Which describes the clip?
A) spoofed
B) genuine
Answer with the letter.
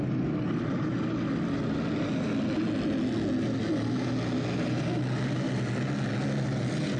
B